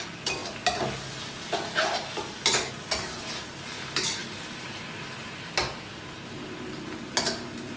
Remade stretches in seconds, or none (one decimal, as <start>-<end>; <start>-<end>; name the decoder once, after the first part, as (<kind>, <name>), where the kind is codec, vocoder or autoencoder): none